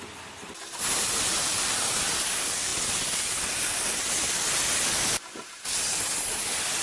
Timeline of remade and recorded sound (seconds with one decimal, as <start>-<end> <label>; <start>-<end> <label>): 0.0-6.8 recorded